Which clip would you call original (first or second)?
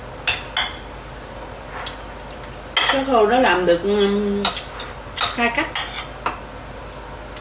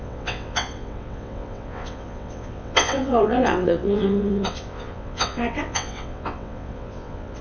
first